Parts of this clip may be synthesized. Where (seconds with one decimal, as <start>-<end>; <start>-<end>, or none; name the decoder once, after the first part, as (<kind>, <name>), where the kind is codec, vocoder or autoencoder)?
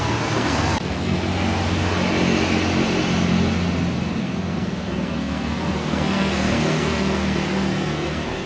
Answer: 0.0-1.3 (codec, SNAC); 4.2-8.5